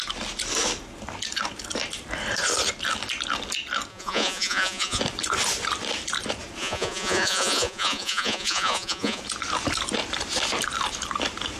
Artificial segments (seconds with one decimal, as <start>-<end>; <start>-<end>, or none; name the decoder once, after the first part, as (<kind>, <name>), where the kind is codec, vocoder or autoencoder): 3.9-5.0 (vocoder, Vocos); 6.6-9.2